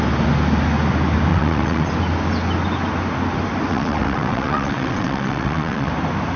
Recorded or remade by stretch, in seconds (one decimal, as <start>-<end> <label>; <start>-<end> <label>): 0.0-1.3 recorded; 1.3-1.9 remade; 1.9-3.7 recorded; 3.7-5.9 remade; 5.9-6.4 recorded

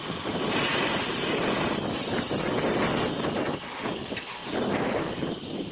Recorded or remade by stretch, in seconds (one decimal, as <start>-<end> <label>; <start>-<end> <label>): 0.0-4.4 recorded; 4.4-5.7 remade

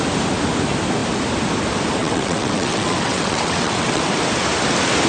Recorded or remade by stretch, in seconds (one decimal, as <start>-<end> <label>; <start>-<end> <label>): 0.0-2.0 recorded; 2.0-4.0 remade; 4.0-5.1 recorded

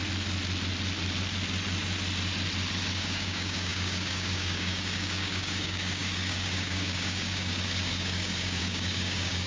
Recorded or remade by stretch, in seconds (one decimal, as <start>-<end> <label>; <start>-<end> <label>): 0.0-2.9 recorded; 2.9-9.5 remade

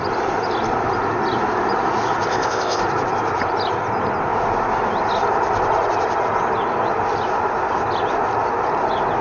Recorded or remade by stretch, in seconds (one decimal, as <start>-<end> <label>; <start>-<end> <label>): 0.0-2.3 recorded; 2.3-2.8 remade; 2.8-9.2 recorded

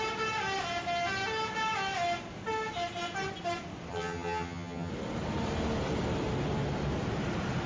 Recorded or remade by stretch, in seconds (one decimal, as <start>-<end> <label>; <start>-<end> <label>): 0.0-3.9 recorded; 3.9-4.9 remade; 4.9-7.7 recorded

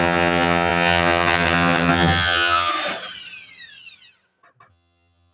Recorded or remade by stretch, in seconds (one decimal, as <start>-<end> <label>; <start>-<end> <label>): 0.0-2.7 remade; 2.7-4.7 recorded; 4.7-5.3 remade